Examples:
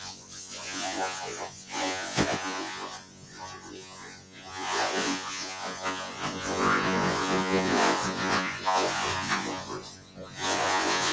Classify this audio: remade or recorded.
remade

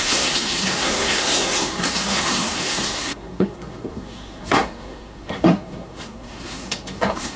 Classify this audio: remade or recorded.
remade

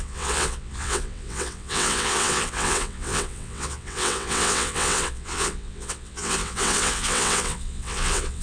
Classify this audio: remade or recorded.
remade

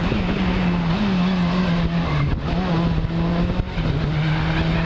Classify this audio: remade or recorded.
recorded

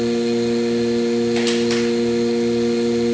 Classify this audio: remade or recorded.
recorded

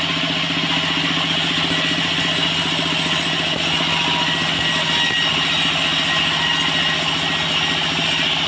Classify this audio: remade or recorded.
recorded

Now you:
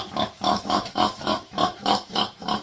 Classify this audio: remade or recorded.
remade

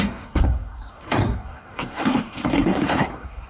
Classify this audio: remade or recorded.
remade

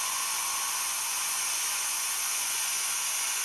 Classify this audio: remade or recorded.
remade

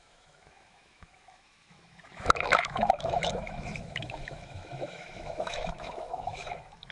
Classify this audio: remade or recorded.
remade